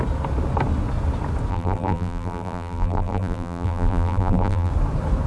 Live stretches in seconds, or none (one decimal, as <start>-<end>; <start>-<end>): 0.0-1.5; 4.7-5.3